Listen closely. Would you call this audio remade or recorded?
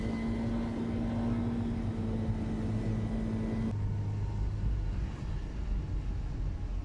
recorded